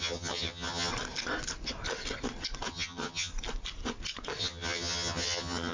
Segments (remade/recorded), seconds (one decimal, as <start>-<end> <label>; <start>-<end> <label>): 0.0-0.9 remade; 0.9-2.7 recorded; 2.7-3.3 remade; 3.3-4.4 recorded; 4.4-5.7 remade